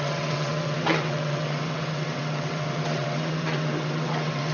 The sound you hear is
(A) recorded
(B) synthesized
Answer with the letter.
B